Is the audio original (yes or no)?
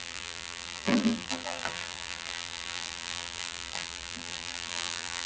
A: no